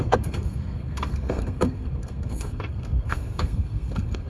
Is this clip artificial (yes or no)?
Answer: yes